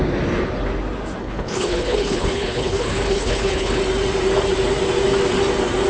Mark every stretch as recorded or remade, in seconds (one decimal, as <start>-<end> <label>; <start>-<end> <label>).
0.0-1.2 recorded; 1.2-3.8 remade; 3.8-5.9 recorded